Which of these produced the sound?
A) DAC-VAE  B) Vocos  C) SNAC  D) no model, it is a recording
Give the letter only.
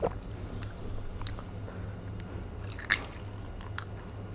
D